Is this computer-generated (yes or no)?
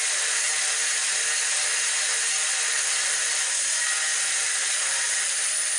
no